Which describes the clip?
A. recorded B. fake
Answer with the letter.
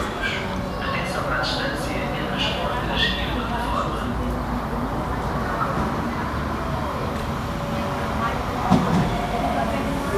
A